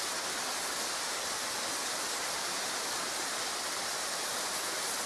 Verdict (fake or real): real